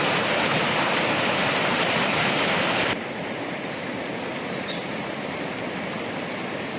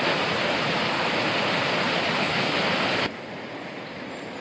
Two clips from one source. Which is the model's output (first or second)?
first